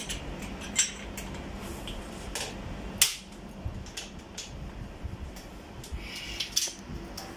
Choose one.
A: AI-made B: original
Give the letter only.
B